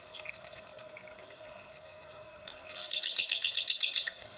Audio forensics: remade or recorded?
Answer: remade